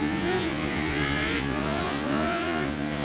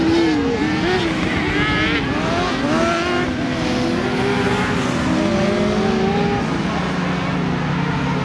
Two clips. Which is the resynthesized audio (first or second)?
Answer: first